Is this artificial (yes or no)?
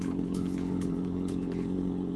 yes